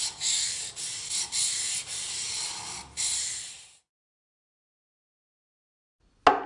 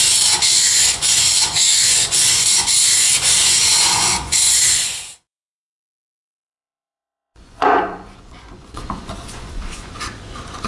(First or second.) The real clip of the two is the first